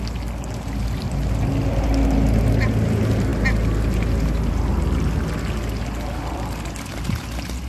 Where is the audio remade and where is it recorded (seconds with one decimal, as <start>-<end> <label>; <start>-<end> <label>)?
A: 0.0-7.7 recorded